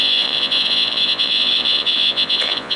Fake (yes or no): yes